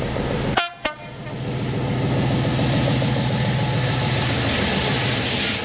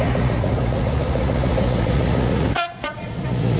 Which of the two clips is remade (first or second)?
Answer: second